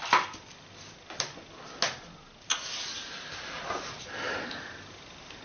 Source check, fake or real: real